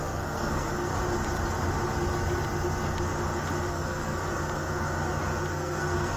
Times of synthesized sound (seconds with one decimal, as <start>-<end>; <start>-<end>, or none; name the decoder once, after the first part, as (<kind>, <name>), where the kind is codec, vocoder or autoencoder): 0.0-0.9 (codec, SNAC); 3.7-4.3; 5.5-6.2